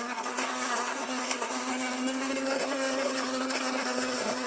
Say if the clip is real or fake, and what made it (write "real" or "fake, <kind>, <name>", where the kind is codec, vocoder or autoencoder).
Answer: fake, codec, SNAC